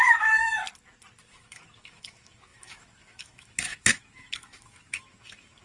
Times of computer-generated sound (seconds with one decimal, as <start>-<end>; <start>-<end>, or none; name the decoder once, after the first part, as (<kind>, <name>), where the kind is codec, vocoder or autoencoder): 0.0-0.6 (autoencoder, DAC-VAE); 1.2-5.6